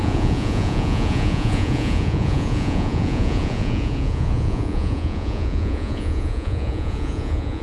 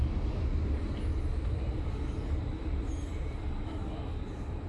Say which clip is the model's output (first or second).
first